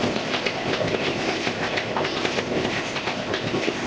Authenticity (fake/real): fake